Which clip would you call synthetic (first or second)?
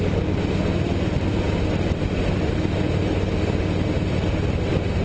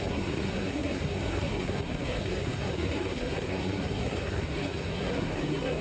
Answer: second